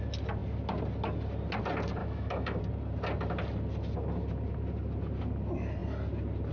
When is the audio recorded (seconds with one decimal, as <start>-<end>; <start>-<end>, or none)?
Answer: 0.0-2.0; 2.6-6.5